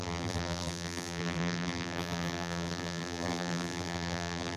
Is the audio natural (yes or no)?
no